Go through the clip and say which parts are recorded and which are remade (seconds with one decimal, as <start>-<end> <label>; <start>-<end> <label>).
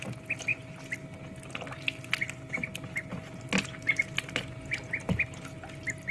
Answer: 0.0-6.1 recorded